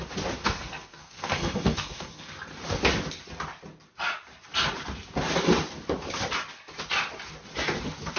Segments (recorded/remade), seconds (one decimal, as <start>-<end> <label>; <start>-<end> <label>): 0.0-0.4 recorded; 0.4-2.3 remade; 2.3-8.2 recorded